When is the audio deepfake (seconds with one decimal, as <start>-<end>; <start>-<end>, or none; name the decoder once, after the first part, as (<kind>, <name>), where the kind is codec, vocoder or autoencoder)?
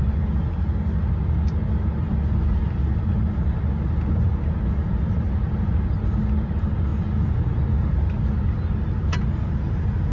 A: none